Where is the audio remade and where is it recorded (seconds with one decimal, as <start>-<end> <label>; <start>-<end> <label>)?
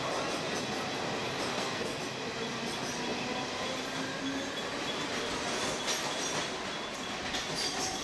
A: 0.0-1.5 recorded; 1.5-2.0 remade; 2.0-8.0 recorded